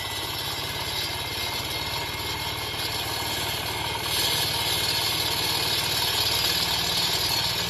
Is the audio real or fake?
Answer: real